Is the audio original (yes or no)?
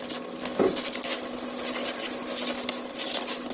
yes